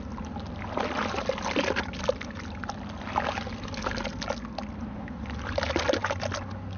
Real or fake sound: real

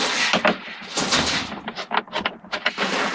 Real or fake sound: real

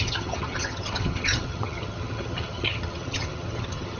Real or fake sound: fake